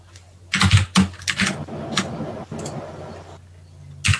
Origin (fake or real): real